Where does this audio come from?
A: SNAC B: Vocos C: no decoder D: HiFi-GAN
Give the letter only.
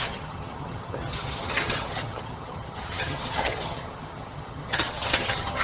D